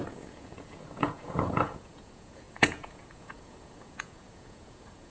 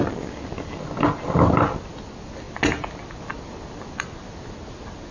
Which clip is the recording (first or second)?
second